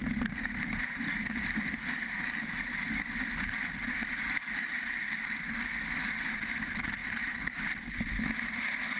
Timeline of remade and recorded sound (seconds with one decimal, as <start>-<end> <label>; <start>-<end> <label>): 0.0-1.2 remade; 1.2-9.0 recorded